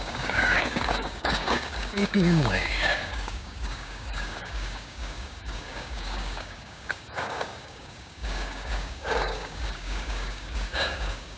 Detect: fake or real fake